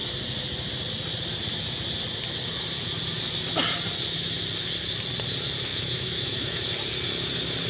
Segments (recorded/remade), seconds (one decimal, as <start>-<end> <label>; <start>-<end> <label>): 0.0-5.7 recorded; 5.7-6.6 remade; 6.6-7.7 recorded